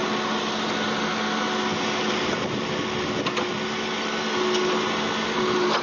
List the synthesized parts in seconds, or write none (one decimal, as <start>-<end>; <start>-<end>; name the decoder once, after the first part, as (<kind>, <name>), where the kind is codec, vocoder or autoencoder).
none